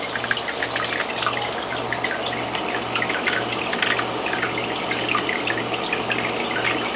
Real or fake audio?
fake